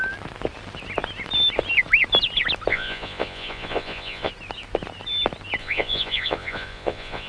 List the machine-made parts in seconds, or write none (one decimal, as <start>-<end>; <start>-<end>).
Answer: 2.7-4.3; 5.6-7.3